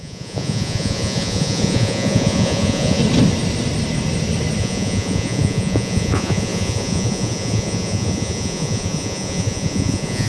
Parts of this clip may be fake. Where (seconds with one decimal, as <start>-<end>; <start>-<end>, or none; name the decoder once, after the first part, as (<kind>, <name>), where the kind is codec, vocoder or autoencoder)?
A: 0.0-3.0 (vocoder, Vocos); 4.6-10.3